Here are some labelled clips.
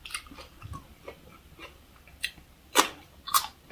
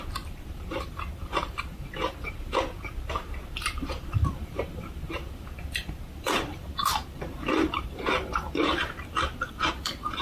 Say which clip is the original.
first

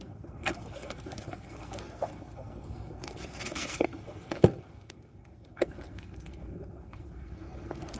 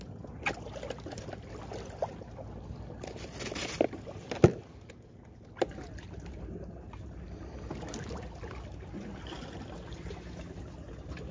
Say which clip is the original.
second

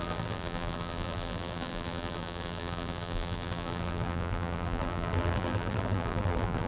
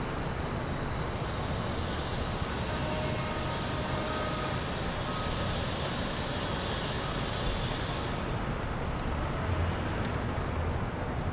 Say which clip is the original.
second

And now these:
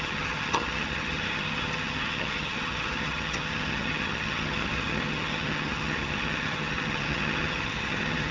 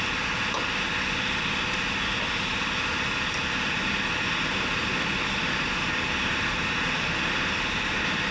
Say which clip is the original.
second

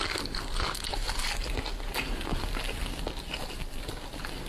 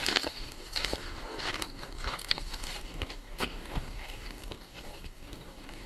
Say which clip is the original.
first